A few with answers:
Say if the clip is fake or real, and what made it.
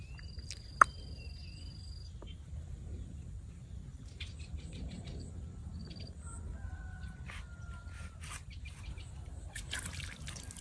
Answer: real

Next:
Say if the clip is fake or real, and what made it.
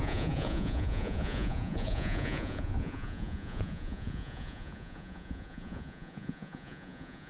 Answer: fake, vocoder, Vocos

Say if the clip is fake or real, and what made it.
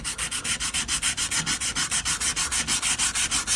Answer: real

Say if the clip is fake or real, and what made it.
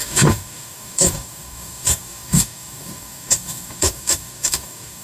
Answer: fake, codec, DAC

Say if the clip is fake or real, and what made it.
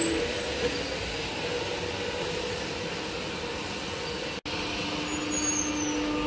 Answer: real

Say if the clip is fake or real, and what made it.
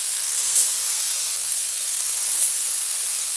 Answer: fake, codec, SNAC